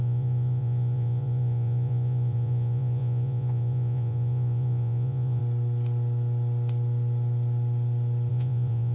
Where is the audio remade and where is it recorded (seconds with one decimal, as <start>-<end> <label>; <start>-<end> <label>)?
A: 0.0-5.4 remade; 5.4-8.3 recorded; 8.3-8.9 remade